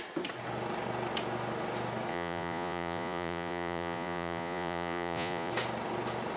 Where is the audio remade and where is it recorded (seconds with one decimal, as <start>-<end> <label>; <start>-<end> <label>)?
0.0-2.1 recorded; 2.1-5.5 remade; 5.5-6.4 recorded